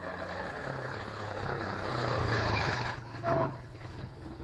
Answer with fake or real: fake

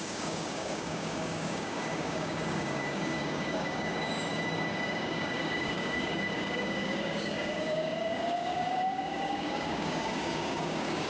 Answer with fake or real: fake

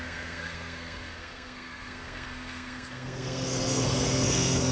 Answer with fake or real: fake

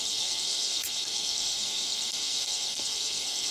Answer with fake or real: fake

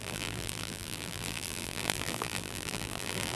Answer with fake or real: fake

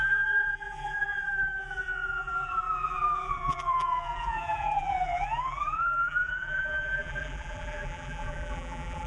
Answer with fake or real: fake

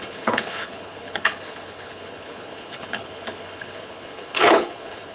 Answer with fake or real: fake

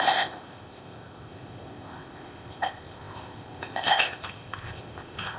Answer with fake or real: fake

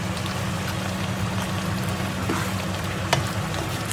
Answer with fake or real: real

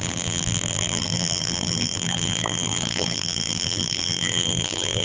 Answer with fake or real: fake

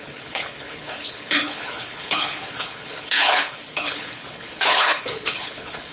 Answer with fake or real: fake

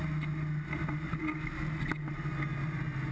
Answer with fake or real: real